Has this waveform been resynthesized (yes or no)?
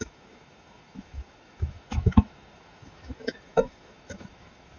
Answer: yes